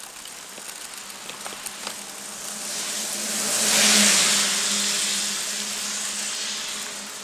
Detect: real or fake real